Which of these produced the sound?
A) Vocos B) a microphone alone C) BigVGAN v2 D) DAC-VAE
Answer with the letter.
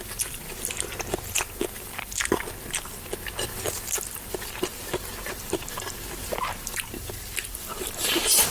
B